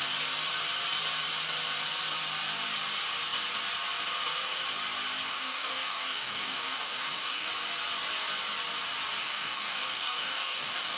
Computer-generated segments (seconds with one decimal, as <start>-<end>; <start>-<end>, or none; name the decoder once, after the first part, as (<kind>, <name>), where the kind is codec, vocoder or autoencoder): 5.3-7.5 (codec, DAC); 9.2-11.0